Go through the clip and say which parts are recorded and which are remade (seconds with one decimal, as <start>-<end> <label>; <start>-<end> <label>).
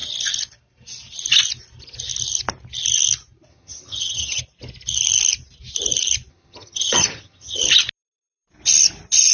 0.0-3.5 recorded; 3.5-4.4 remade; 4.4-6.3 recorded; 6.3-7.6 remade; 7.6-9.3 recorded